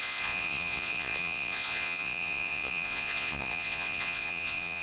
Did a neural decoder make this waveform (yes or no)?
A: yes